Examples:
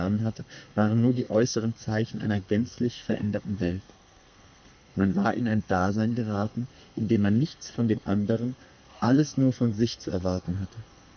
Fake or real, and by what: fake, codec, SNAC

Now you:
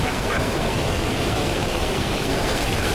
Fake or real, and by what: fake, codec, SNAC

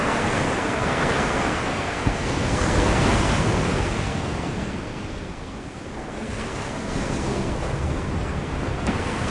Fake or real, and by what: fake, codec, SNAC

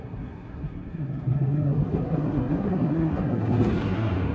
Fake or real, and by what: fake, codec, SNAC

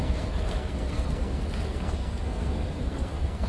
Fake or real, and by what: fake, codec, SNAC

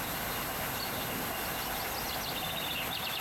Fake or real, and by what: real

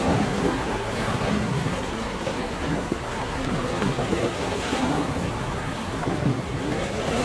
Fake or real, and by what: fake, codec, SNAC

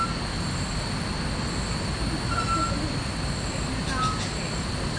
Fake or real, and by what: real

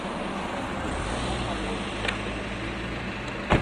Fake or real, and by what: real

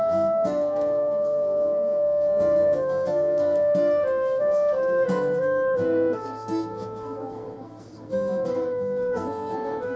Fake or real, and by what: fake, codec, SNAC